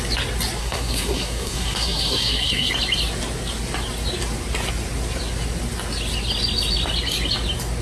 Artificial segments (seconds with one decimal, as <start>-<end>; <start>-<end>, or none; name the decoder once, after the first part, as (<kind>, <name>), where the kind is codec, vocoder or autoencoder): 0.6-2.7 (codec, SNAC)